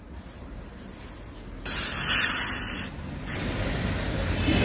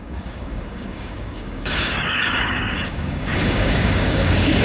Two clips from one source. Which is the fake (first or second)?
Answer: second